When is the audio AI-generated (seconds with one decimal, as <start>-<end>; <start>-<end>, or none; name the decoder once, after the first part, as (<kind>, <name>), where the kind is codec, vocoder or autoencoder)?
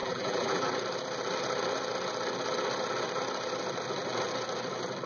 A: 0.0-0.7 (vocoder, BigVGAN v2)